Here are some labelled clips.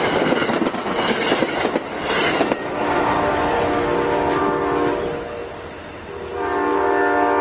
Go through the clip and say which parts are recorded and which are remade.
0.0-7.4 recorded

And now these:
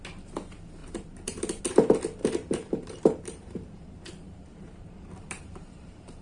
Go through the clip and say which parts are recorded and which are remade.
0.0-0.8 recorded; 0.8-1.6 remade; 1.6-2.2 recorded; 2.2-6.2 remade